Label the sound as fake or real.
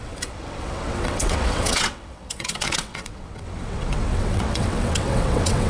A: fake